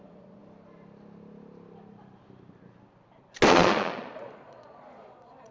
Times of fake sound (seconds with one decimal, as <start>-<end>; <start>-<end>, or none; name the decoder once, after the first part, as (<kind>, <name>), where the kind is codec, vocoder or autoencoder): 0.0-0.4 (vocoder, Vocos); 3.5-5.5